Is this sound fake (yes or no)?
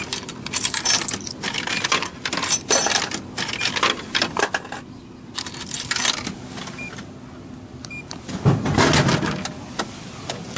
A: no